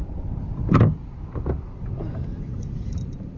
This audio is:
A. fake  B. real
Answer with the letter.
B